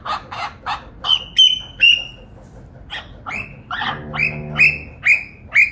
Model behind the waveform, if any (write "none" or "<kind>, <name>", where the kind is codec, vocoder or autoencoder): none